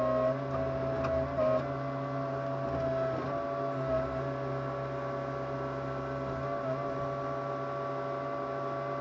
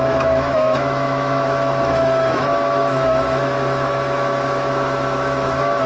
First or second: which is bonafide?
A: first